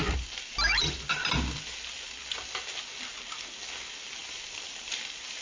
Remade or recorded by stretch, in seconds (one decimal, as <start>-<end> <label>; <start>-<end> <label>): 0.0-5.4 recorded